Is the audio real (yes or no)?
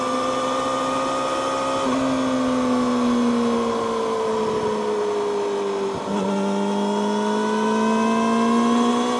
yes